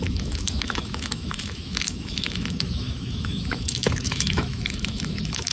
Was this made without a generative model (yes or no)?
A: no